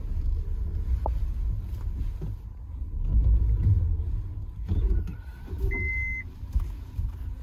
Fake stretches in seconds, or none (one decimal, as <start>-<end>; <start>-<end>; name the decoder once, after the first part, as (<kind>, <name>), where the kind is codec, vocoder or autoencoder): none